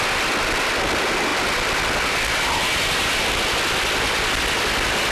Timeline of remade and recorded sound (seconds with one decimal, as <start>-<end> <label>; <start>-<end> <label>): 0.0-5.1 recorded